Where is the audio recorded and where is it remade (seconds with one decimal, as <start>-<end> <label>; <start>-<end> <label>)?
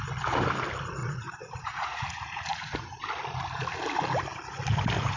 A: 0.0-1.0 recorded; 1.0-3.0 remade; 3.0-5.2 recorded